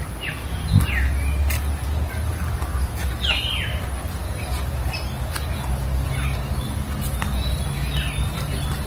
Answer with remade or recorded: recorded